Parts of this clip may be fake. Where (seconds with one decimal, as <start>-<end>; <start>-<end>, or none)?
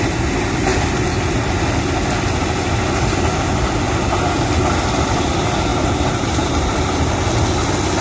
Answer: 5.7-7.3